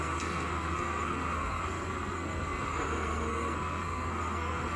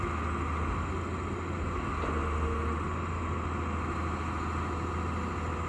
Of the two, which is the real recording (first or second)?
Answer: second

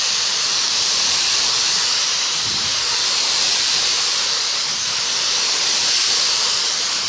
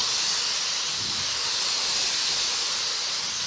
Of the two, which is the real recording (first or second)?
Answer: second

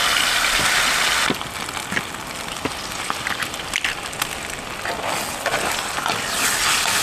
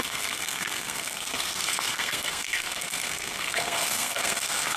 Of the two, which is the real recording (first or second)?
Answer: first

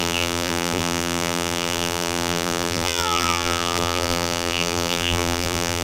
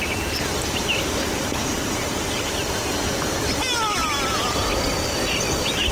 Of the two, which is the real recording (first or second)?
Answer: second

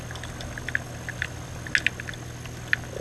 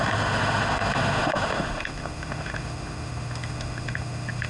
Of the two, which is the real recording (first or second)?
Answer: first